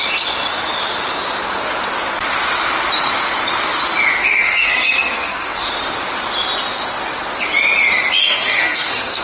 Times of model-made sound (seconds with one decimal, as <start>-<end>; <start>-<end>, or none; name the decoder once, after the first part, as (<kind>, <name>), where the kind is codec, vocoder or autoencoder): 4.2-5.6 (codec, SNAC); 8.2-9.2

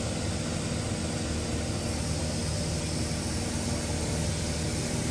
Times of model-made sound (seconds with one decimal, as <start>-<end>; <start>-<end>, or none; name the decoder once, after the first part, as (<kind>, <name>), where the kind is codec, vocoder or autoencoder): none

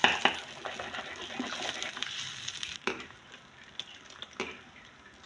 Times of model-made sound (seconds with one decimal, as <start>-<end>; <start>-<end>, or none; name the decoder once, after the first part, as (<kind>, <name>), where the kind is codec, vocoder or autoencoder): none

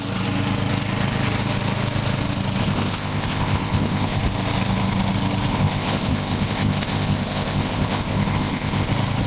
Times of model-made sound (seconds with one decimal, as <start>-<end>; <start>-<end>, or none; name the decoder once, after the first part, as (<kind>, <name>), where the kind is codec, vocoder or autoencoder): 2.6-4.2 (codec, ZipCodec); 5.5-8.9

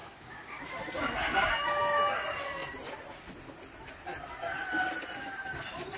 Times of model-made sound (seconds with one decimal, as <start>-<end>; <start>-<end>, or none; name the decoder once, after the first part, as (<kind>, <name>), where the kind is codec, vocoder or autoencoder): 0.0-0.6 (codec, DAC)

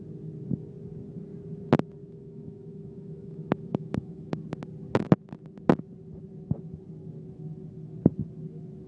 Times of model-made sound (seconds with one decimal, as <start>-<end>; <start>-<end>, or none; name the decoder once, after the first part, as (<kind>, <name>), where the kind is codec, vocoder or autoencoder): 2.0-4.4 (autoencoder, DAC-VAE)

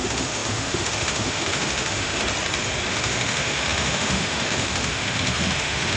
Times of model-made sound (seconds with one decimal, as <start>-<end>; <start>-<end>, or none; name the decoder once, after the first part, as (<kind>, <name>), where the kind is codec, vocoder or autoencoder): 0.0-2.2 (autoencoder, DAC-VAE); 2.9-6.0